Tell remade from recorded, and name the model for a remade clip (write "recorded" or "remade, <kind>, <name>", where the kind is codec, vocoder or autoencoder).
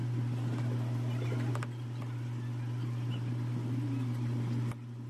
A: recorded